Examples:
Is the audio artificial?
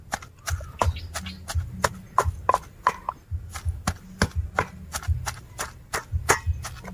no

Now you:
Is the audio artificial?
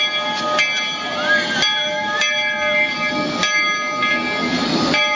no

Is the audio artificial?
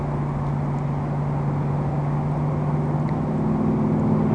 no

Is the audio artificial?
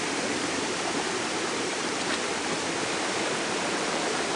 no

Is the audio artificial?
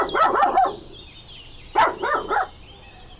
no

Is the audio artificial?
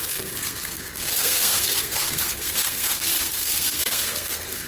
yes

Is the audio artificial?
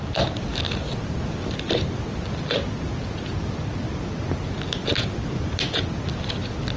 no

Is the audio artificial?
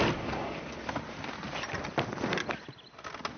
no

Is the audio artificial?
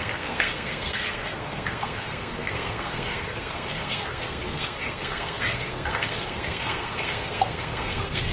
yes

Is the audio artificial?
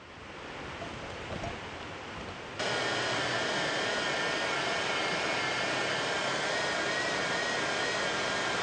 no